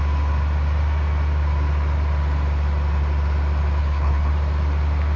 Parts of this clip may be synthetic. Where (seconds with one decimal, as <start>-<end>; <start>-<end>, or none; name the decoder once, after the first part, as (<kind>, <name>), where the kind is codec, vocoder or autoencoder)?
3.8-4.3 (codec, HILCodec)